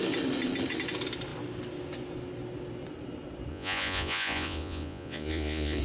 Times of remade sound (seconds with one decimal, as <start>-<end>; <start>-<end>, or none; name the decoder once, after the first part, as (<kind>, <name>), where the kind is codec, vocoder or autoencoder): 3.5-5.8 (vocoder, Vocos)